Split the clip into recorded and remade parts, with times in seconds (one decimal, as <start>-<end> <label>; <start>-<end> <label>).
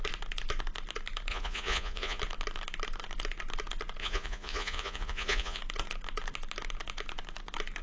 0.0-1.3 recorded; 1.3-2.2 remade; 2.2-4.0 recorded; 4.0-5.6 remade; 5.6-7.8 recorded